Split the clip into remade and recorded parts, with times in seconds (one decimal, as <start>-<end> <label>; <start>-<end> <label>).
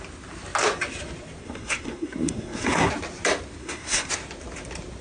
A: 0.0-1.4 recorded; 1.4-2.9 remade; 2.9-3.6 recorded; 3.6-4.1 remade; 4.1-5.0 recorded